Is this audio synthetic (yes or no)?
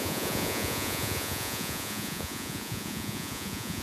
yes